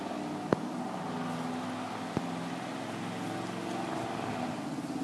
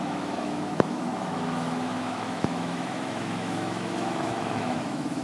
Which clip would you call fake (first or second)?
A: second